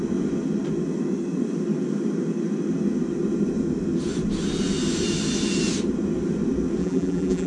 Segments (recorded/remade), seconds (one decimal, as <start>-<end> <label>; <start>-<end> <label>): 0.0-6.8 recorded; 6.8-7.5 remade